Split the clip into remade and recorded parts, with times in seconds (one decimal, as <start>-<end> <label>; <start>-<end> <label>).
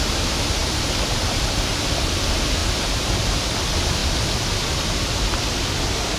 0.0-0.6 recorded; 0.6-1.7 remade; 1.7-4.0 recorded; 4.0-6.2 remade